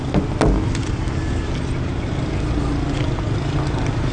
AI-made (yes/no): no